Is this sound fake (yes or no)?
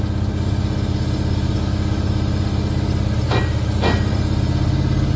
no